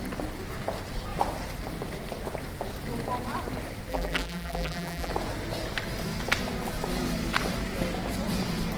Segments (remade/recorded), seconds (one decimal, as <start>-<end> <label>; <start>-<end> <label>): 0.0-3.9 recorded; 3.9-5.1 remade; 5.1-8.8 recorded